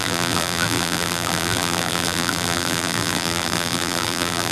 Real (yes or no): no